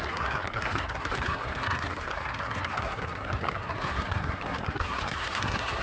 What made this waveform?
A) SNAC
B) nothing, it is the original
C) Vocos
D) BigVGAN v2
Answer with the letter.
A